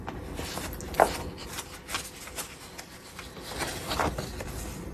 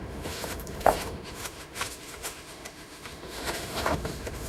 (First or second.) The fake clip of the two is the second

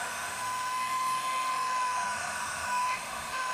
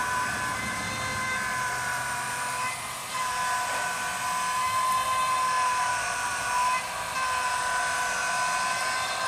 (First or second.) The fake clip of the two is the first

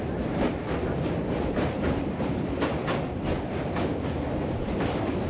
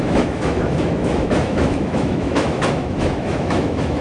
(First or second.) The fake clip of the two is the second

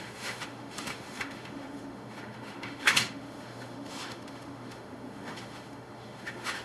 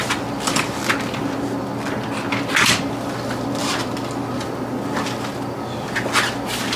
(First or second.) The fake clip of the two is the first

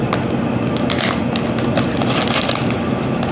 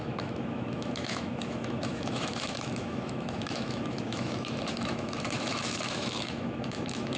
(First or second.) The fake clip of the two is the second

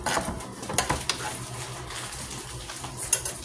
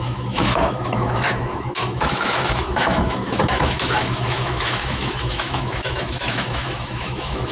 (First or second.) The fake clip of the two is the second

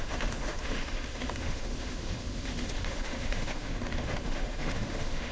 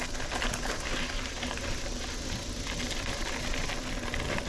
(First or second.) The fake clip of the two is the first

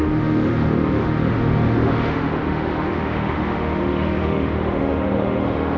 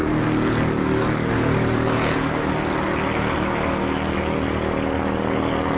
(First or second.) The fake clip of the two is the first